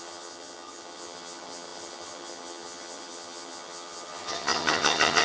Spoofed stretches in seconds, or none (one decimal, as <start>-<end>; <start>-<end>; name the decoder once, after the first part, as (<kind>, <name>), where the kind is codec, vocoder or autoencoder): 0.0-5.2 (vocoder, HiFi-GAN)